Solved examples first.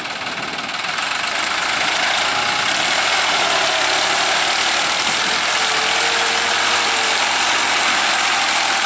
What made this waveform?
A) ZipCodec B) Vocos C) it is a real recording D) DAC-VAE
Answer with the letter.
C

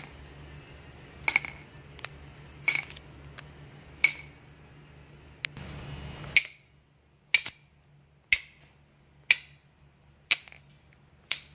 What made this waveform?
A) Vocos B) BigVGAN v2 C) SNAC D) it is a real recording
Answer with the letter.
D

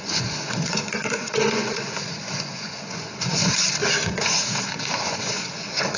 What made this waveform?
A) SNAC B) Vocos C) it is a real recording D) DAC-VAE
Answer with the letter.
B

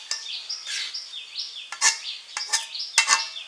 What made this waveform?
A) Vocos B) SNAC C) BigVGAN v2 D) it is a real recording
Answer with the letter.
D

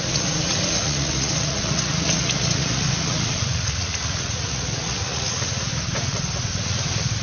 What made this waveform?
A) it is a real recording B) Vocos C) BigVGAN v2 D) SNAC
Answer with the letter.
B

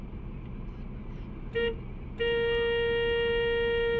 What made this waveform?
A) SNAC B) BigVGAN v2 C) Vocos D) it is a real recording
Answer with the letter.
D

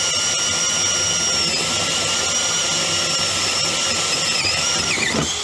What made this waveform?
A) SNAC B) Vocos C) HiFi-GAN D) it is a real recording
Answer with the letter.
D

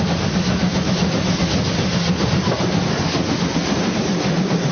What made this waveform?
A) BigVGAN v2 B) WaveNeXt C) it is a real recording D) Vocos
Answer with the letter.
C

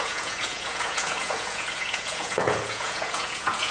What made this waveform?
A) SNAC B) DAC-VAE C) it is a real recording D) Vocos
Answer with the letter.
D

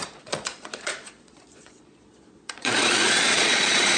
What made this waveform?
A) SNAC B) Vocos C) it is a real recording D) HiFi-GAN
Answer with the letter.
B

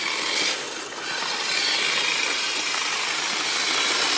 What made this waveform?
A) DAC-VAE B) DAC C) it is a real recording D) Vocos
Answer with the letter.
C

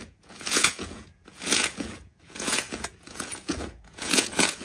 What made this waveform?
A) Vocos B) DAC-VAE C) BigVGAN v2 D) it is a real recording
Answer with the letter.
A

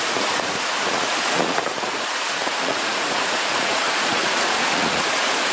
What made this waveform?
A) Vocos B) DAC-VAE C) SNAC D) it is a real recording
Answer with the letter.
A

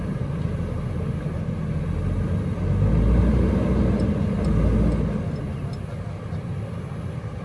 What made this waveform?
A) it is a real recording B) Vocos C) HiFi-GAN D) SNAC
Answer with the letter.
A